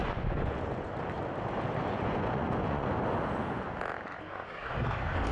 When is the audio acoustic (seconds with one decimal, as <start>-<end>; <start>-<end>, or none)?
0.9-1.8; 2.9-5.3

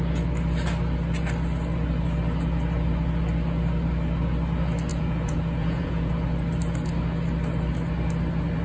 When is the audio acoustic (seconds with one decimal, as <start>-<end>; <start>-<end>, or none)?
0.0-4.9; 6.1-8.6

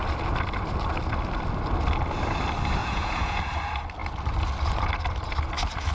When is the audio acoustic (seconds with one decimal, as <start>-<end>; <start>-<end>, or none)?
0.0-2.8; 3.4-5.9

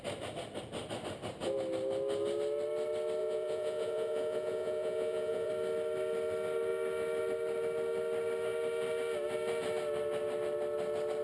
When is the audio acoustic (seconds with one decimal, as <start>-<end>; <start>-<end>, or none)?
0.0-3.2; 5.5-11.2